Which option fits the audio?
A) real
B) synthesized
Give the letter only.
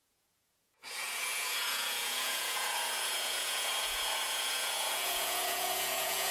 B